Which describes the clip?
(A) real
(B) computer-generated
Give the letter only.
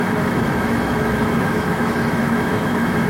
B